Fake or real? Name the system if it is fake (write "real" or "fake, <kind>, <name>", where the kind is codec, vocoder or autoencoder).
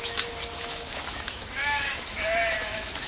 fake, autoencoder, DAC-VAE